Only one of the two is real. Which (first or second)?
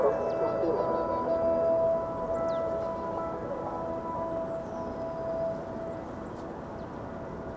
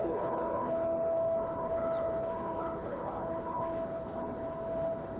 first